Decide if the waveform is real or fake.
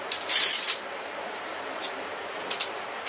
real